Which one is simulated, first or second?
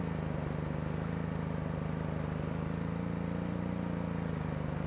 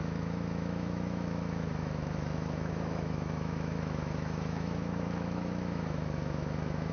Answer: second